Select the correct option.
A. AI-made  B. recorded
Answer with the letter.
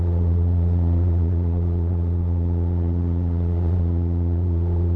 A